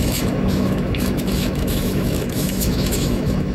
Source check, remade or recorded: remade